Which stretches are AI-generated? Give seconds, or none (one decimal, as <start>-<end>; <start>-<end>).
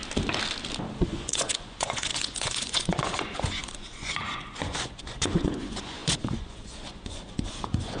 1.0-8.0